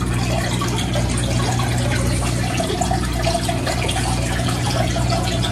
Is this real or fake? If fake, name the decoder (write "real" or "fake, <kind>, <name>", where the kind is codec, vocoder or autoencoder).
real